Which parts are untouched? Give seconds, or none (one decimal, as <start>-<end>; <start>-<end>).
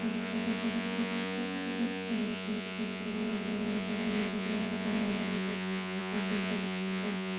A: none